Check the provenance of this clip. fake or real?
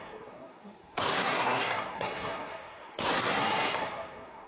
fake